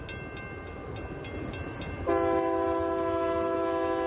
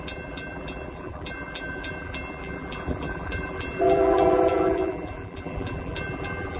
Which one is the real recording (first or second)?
first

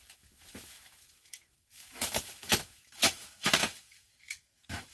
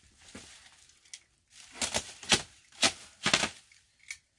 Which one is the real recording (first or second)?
second